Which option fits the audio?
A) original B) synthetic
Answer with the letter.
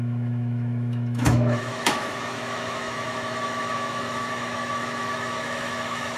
B